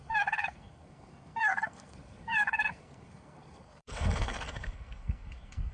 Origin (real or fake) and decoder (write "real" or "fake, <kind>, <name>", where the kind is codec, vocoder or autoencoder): fake, codec, SNAC